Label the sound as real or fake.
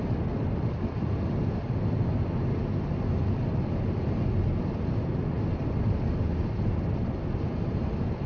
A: real